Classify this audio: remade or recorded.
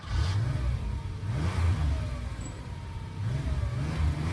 recorded